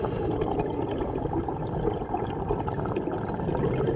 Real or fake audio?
real